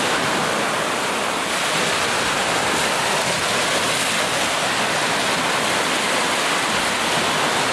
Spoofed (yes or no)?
no